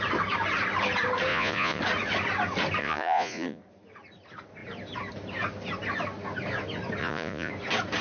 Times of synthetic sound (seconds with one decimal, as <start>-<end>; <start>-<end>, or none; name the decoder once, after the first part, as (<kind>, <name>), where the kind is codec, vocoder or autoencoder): 1.3-1.8 (vocoder, Vocos); 2.8-3.6; 7.0-7.5